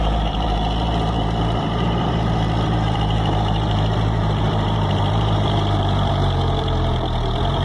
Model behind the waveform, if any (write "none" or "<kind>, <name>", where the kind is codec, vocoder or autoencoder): vocoder, BigVGAN v2